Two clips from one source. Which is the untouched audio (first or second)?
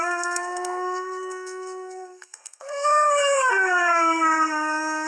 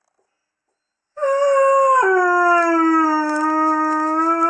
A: second